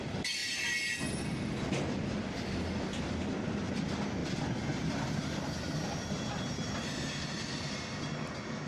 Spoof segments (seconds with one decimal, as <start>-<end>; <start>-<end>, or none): none